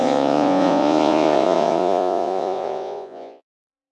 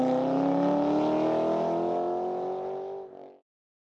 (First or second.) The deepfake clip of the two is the first